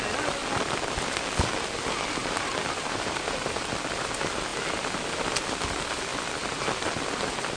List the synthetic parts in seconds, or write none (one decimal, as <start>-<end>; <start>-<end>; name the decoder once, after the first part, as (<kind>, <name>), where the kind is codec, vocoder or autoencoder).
2.2-3.7 (vocoder, BigVGAN v2)